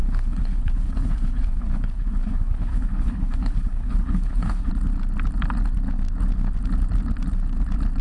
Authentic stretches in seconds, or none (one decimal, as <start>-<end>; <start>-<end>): 4.7-8.0